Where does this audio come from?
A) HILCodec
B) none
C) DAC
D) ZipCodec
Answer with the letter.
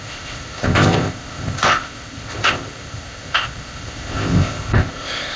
D